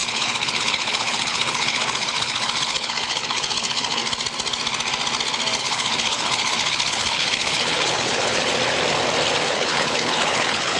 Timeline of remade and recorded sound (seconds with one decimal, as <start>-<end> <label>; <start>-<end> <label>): 0.0-4.0 remade; 4.0-5.6 recorded; 5.6-8.5 remade; 8.5-9.4 recorded; 9.4-10.8 remade